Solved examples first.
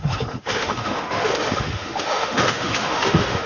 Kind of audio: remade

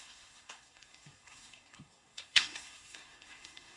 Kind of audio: remade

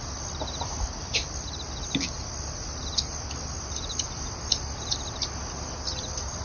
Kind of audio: recorded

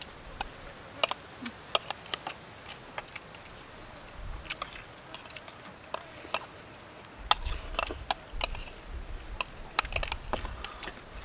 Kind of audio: recorded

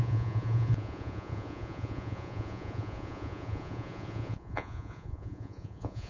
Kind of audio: remade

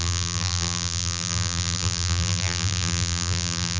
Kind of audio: remade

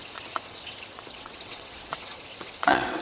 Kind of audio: remade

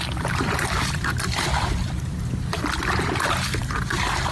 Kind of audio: recorded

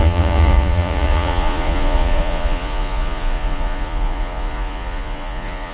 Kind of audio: remade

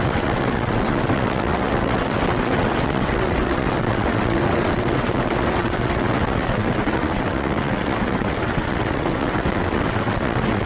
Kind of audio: remade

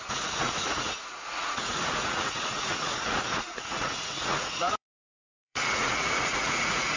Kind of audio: remade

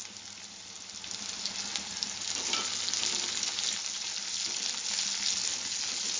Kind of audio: recorded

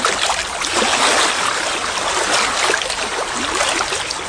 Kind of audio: recorded